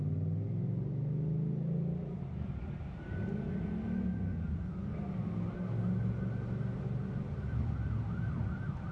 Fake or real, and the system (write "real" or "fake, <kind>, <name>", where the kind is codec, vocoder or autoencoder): real